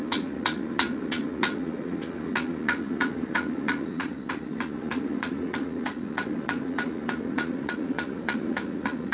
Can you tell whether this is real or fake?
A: fake